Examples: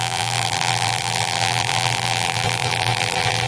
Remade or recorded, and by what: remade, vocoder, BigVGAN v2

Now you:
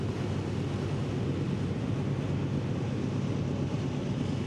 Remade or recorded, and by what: recorded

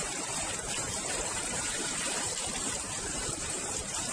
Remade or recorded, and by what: remade, vocoder, BigVGAN v2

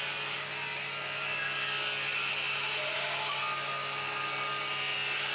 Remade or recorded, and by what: recorded